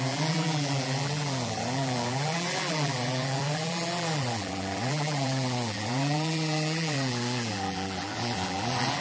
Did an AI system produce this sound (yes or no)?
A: yes